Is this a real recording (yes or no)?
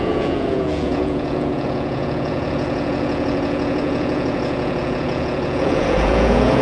no